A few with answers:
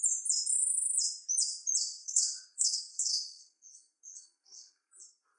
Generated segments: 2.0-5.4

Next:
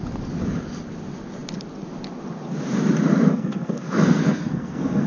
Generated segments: 3.3-5.1

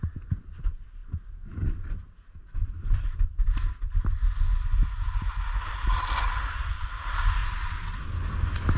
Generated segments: none

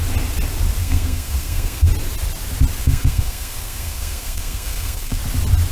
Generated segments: 0.8-1.9; 2.8-5.2

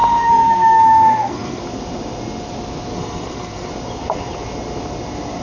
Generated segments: 0.0-1.6; 2.9-3.7

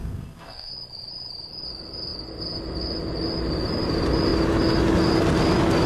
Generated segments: 0.0-0.7

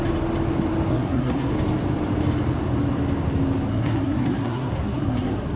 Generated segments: 0.9-1.5; 3.7-5.6